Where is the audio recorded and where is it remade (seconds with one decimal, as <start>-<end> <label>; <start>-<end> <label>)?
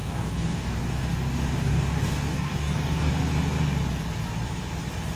0.0-3.1 remade; 3.1-5.2 recorded